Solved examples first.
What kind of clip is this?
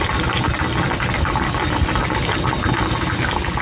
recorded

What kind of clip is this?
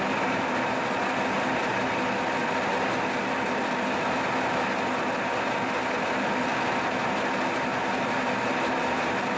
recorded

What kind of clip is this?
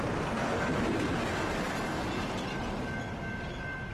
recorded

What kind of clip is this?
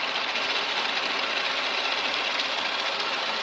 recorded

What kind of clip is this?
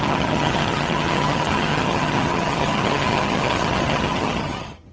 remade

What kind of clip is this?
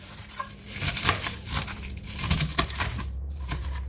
remade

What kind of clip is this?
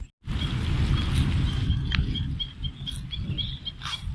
recorded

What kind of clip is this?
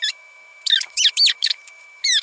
remade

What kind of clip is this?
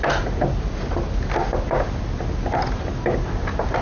recorded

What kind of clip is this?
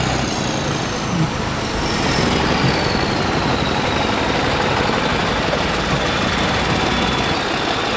recorded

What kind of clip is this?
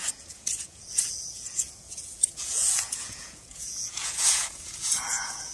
remade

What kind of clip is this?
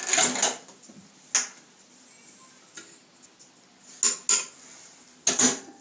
recorded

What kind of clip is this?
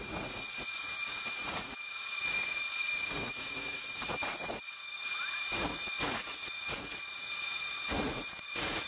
remade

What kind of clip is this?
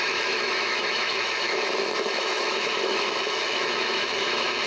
remade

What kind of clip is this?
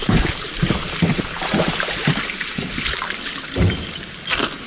remade